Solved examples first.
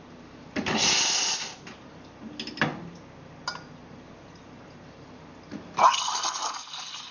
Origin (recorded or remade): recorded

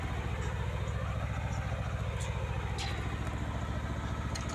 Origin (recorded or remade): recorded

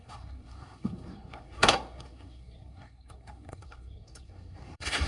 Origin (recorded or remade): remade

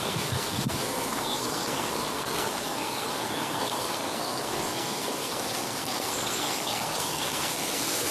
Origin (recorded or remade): remade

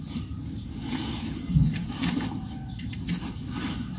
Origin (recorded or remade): recorded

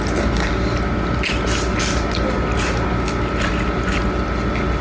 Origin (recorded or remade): recorded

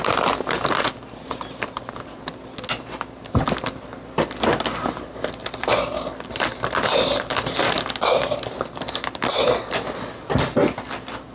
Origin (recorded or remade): recorded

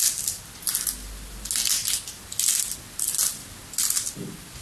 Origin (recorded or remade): recorded